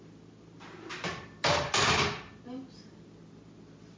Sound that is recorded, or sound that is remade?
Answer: recorded